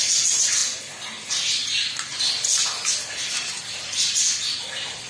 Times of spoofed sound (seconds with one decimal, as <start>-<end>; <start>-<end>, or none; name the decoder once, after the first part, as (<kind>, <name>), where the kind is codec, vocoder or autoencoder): none